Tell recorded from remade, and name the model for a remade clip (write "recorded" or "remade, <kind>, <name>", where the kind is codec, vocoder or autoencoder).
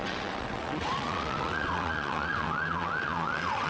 remade, vocoder, WaveNeXt